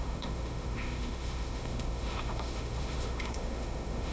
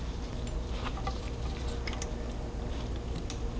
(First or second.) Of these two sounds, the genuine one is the second